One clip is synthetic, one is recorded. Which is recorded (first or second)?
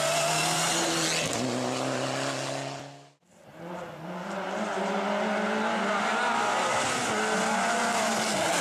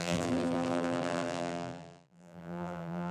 first